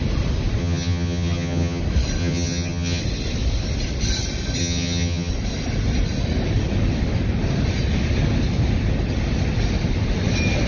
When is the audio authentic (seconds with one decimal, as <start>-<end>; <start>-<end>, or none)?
0.0-0.6; 1.8-2.2; 3.0-4.6; 5.3-10.7